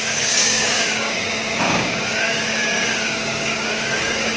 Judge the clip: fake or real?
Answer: fake